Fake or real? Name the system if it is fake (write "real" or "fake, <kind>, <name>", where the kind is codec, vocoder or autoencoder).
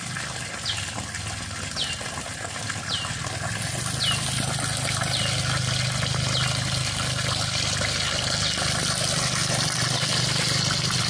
real